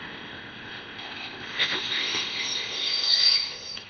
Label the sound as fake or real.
fake